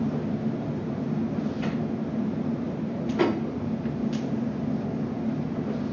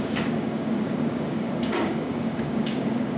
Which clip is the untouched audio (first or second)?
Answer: first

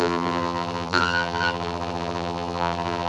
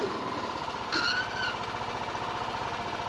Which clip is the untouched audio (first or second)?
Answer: second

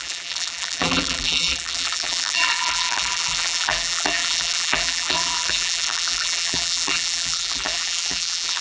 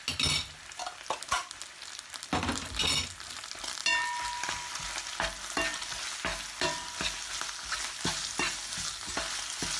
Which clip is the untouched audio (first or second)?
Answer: second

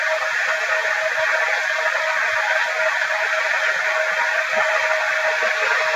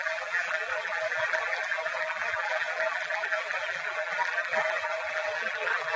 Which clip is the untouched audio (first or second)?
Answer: first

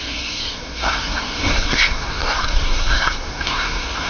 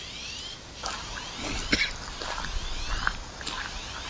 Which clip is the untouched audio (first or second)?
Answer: second